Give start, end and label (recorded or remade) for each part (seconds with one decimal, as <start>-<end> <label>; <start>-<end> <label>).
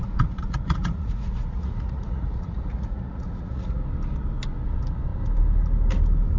0.0-3.8 remade; 3.8-6.4 recorded